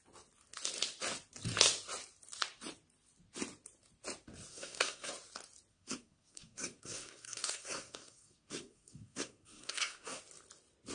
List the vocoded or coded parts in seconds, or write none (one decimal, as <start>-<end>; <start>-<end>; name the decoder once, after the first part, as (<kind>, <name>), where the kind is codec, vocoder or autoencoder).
4.5-5.1 (codec, SNAC); 5.7-10.2